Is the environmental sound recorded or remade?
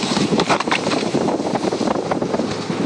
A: remade